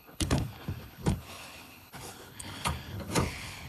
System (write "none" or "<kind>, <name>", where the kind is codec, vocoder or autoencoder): codec, HILCodec